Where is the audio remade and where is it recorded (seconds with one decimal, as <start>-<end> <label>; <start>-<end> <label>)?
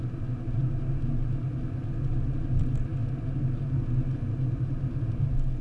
0.0-5.6 recorded